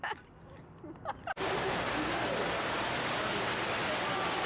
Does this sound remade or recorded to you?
recorded